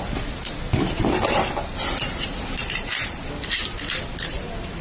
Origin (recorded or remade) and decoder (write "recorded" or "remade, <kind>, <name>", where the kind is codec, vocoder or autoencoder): recorded